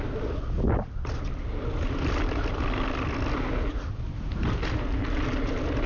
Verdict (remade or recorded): recorded